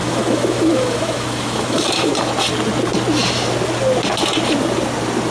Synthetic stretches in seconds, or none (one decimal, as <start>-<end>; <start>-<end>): 0.0-2.1